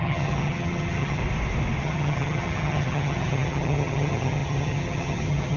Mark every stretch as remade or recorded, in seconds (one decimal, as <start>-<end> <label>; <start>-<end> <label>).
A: 0.0-1.2 remade; 1.2-1.8 recorded; 1.8-5.6 remade